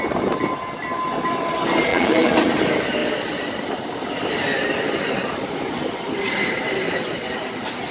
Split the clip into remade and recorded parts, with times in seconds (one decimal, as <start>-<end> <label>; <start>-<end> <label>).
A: 0.0-1.9 recorded; 1.9-2.5 remade; 2.5-7.9 recorded